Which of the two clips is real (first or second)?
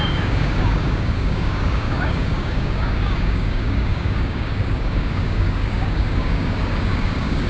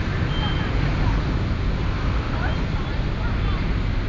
second